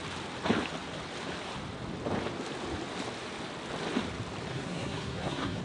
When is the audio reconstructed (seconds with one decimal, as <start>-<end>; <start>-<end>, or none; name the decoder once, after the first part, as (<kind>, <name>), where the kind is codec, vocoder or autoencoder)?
4.5-5.6 (codec, SNAC)